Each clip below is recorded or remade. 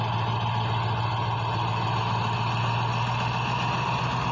recorded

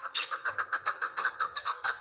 remade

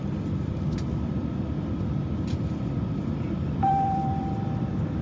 remade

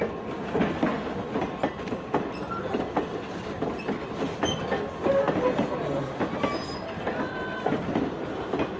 recorded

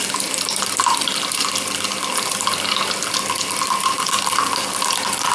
recorded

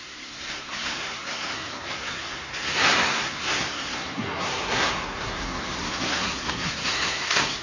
remade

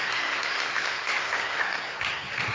remade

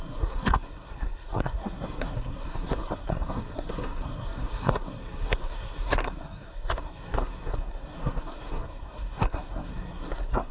remade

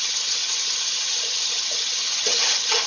remade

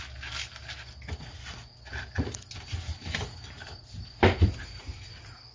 recorded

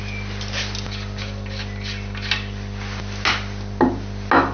recorded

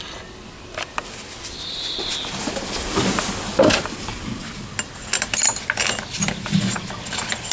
recorded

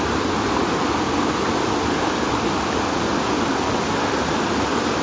recorded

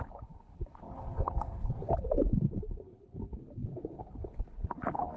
remade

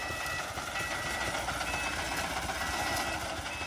recorded